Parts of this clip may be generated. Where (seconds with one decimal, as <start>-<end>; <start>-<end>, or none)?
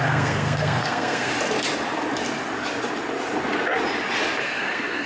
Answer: 0.0-1.3; 4.4-5.1